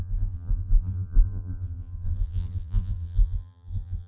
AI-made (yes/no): yes